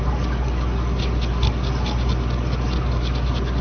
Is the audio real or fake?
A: real